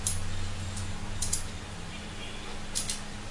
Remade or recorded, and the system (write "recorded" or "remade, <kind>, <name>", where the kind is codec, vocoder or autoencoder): recorded